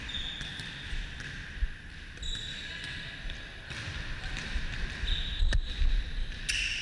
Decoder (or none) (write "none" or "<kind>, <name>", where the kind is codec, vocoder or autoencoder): none